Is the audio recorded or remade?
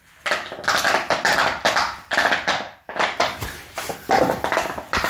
recorded